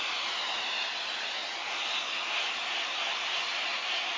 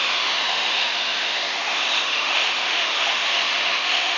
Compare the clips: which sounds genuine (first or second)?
first